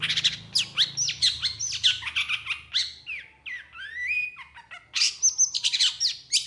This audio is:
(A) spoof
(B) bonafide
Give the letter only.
B